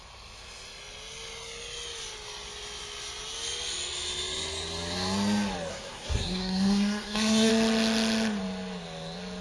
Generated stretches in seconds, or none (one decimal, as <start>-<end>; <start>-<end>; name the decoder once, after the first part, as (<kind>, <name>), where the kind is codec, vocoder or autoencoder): 5.7-7.5 (codec, SNAC)

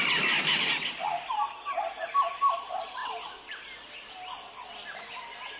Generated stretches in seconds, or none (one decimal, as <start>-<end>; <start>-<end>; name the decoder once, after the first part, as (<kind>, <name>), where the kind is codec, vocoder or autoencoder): none

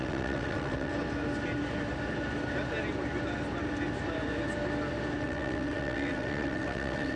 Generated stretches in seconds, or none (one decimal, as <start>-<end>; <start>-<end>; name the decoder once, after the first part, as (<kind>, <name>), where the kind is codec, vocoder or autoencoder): 0.0-0.9 (vocoder, WaveNeXt); 5.2-7.2